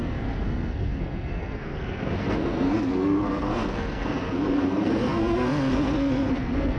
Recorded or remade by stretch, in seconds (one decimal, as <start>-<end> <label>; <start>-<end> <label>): 0.0-6.8 remade